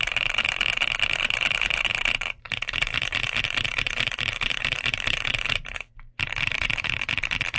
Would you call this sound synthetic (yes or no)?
yes